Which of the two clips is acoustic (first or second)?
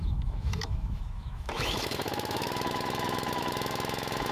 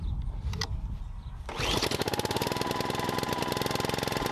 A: second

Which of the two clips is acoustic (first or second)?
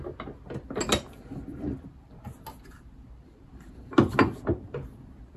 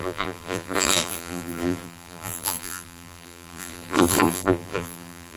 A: first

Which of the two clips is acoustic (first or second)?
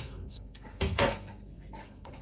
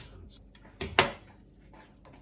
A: second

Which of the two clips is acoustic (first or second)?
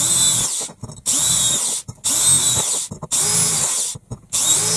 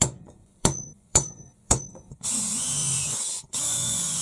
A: first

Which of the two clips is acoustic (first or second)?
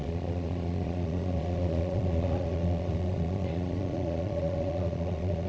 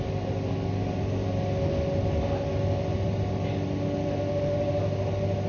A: second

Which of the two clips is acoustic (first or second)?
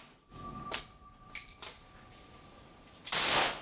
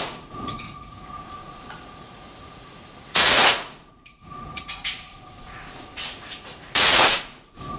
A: first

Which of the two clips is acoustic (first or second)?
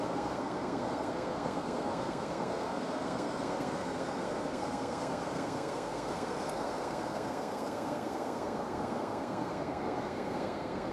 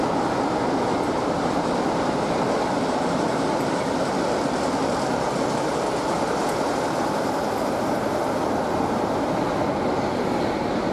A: second